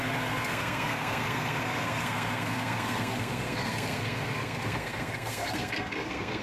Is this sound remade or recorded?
remade